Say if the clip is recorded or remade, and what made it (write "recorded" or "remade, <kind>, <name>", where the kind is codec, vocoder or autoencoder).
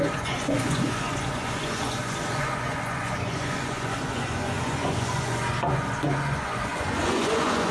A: remade, vocoder, Vocos